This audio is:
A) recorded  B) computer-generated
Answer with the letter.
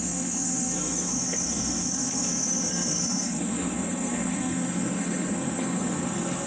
B